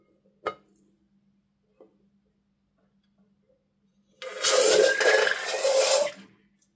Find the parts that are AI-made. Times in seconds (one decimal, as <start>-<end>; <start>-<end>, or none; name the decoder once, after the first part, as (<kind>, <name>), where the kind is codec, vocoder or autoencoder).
none